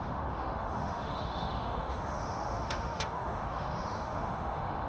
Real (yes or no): no